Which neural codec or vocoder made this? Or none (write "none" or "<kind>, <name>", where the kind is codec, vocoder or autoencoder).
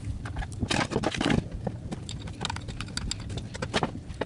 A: none